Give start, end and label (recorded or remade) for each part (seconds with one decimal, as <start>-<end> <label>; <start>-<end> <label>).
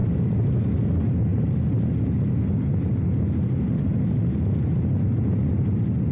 0.0-6.1 recorded